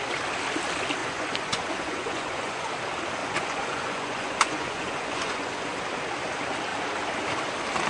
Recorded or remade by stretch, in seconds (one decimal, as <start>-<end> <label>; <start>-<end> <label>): 0.0-1.0 recorded; 1.0-2.7 remade; 2.7-3.2 recorded; 3.2-5.7 remade; 5.7-7.9 recorded